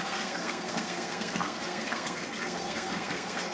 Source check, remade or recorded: remade